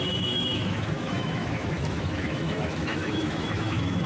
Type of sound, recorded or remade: remade